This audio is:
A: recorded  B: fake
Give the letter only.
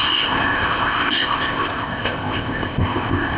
B